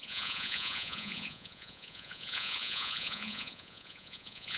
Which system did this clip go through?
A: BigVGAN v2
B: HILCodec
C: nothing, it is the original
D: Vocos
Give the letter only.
D